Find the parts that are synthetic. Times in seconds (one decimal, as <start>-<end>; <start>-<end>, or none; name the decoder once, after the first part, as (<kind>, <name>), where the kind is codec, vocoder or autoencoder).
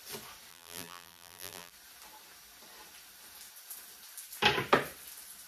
0.5-1.7 (vocoder, BigVGAN v2)